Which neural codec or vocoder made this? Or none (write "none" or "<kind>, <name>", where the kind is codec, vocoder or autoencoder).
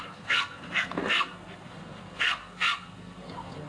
codec, SNAC